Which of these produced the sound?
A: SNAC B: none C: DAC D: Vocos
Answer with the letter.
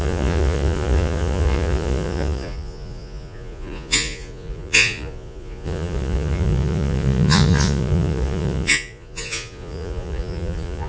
D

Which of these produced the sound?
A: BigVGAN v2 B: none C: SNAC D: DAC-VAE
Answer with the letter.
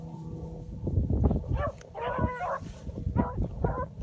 B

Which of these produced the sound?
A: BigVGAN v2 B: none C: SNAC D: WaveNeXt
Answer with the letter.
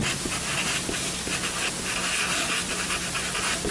B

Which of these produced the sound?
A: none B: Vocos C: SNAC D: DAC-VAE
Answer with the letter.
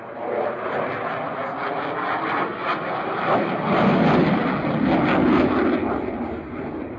A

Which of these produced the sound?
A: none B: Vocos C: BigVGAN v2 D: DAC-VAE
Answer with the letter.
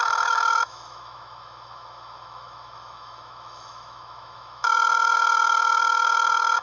D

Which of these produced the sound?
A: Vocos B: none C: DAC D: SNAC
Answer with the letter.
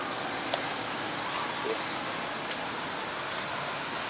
B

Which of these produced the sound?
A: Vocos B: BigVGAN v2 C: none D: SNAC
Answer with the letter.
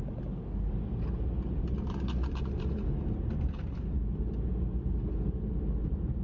C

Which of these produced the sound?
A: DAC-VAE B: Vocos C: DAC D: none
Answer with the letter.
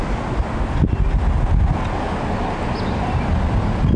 D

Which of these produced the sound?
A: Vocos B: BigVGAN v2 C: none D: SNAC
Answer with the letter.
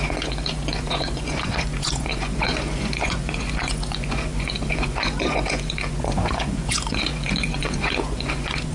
A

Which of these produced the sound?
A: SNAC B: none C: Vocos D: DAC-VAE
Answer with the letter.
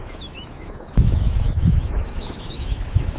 D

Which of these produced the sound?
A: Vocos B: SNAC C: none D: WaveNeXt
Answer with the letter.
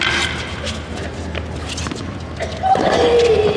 C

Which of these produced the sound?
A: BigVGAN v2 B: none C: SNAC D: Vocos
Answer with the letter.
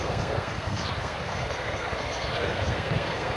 C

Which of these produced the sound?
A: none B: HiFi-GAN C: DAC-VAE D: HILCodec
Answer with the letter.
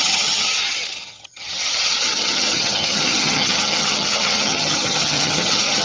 B